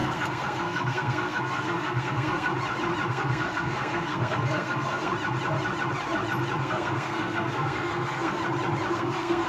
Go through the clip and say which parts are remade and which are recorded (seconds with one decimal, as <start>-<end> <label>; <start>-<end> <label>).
0.0-2.5 remade; 2.5-3.1 recorded; 3.1-5.1 remade; 5.1-6.6 recorded; 6.6-8.4 remade; 8.4-8.9 recorded; 8.9-9.5 remade